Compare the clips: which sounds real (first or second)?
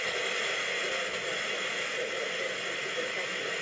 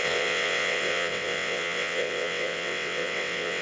first